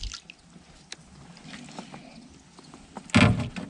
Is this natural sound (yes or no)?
yes